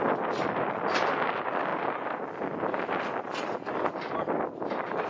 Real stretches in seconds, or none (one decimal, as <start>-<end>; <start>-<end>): 0.0-5.1